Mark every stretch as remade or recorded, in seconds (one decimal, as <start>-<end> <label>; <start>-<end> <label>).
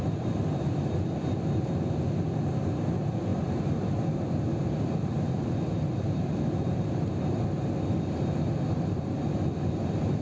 0.0-10.2 recorded